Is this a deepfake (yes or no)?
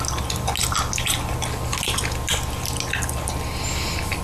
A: no